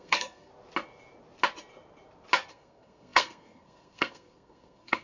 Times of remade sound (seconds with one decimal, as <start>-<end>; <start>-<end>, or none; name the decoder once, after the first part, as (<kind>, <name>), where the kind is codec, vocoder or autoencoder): 0.0-0.5 (codec, SNAC); 2.5-5.0